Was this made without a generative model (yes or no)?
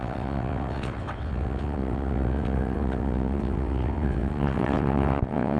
no